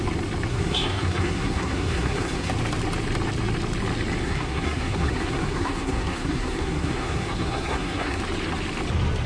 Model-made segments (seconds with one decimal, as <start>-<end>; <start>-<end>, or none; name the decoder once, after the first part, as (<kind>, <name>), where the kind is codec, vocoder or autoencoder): 0.5-2.5 (codec, SNAC); 4.2-8.2

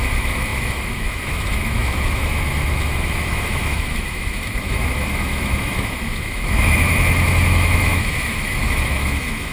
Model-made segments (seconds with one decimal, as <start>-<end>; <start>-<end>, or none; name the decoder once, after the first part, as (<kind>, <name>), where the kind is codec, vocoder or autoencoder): 0.0-9.5 (autoencoder, DAC-VAE)

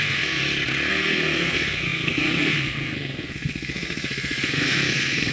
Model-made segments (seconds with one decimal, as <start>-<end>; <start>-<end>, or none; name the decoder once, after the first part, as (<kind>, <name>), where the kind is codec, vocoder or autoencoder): 0.0-0.4 (codec, SNAC); 0.9-5.3

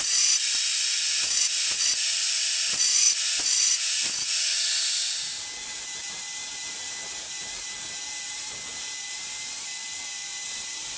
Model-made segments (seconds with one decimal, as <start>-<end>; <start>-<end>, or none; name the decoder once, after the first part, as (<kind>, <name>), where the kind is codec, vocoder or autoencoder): none